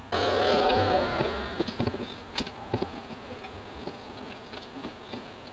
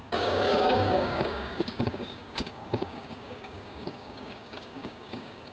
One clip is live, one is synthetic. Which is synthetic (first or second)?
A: second